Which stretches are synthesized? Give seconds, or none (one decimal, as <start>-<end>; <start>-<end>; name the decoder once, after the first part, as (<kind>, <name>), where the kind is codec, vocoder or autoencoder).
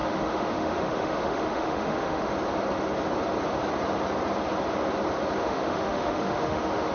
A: 0.0-2.3 (autoencoder, DAC-VAE); 5.4-6.9